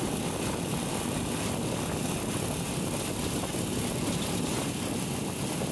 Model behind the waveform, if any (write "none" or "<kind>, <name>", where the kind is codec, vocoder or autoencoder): none